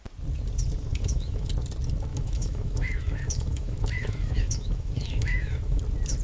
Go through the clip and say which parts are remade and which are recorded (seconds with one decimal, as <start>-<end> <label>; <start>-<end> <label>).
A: 0.0-0.9 recorded; 0.9-1.5 remade; 1.5-2.1 recorded; 2.1-5.8 remade; 5.8-6.2 recorded